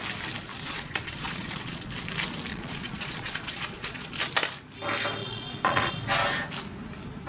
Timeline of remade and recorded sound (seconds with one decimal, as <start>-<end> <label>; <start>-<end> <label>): 0.0-0.5 recorded; 0.5-1.9 remade; 1.9-2.5 recorded; 2.5-4.2 remade; 4.2-5.2 recorded; 5.2-5.9 remade; 5.9-7.3 recorded